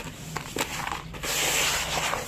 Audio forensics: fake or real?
real